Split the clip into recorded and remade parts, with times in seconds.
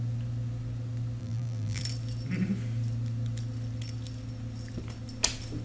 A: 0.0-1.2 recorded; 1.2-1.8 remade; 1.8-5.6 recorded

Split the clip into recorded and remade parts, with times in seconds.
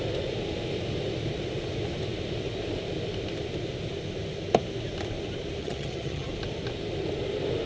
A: 0.0-5.6 recorded; 5.6-6.3 remade; 6.3-7.7 recorded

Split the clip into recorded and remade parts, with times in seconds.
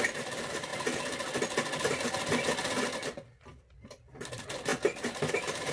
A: 0.0-5.7 recorded